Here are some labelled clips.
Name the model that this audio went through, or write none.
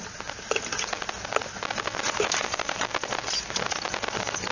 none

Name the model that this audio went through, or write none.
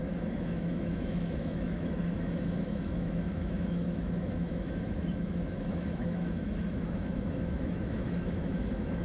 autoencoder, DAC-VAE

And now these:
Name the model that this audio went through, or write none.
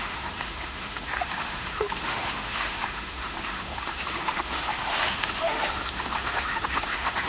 autoencoder, DAC-VAE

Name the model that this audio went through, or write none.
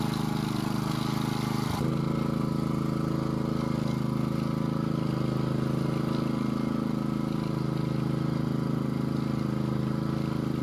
none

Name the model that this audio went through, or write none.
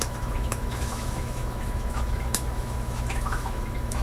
autoencoder, DAC-VAE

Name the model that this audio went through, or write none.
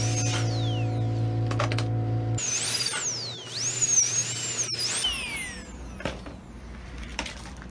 none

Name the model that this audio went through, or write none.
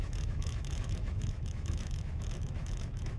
autoencoder, DAC-VAE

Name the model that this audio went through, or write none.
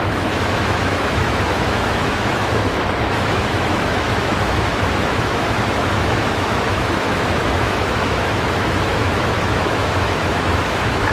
autoencoder, DAC-VAE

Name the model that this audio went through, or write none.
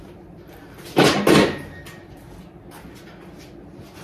none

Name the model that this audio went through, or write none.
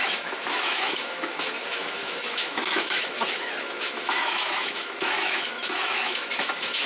autoencoder, DAC-VAE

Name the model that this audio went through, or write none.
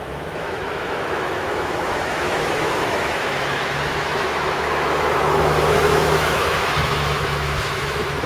autoencoder, DAC-VAE